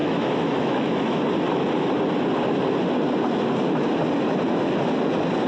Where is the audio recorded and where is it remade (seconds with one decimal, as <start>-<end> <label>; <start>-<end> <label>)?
0.0-1.2 remade; 1.2-5.5 recorded